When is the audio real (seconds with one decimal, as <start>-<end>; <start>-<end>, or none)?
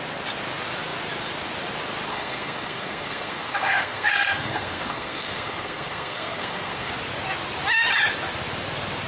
0.0-2.1; 6.9-9.1